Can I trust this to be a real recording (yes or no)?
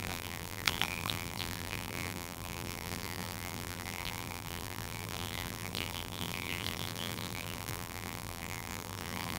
no